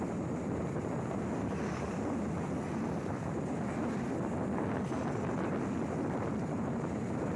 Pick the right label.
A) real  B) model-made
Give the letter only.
A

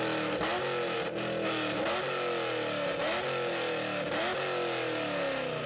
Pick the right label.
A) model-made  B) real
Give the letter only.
B